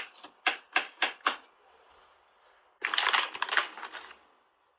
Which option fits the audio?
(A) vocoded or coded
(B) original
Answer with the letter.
B